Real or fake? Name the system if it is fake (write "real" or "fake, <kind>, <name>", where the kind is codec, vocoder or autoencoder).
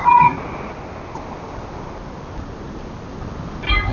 real